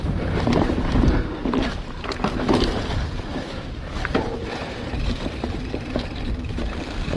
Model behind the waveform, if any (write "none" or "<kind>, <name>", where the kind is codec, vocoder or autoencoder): vocoder, BigVGAN v2